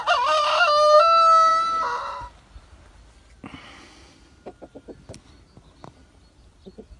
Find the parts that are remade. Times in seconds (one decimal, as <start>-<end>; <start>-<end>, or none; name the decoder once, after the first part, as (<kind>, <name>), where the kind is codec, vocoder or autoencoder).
none